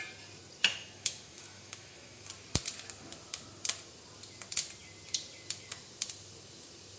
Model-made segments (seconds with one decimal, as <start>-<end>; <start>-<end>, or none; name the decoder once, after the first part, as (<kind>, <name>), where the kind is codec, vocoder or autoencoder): 0.7-2.3 (autoencoder, DAC-VAE)